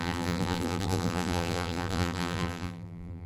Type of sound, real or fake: fake